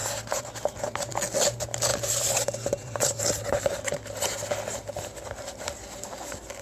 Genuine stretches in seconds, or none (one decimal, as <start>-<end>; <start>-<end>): 0.0-1.9; 3.2-6.6